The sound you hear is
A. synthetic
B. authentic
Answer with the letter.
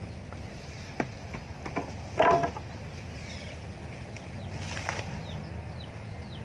B